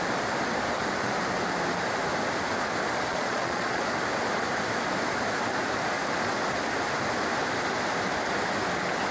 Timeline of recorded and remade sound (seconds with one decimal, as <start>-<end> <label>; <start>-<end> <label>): 0.0-3.1 recorded; 3.1-3.8 remade; 3.8-9.1 recorded